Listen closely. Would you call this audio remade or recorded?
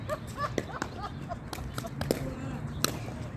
recorded